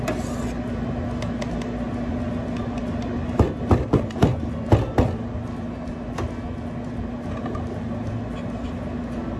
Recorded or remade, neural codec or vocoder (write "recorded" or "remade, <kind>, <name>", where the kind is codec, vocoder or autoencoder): recorded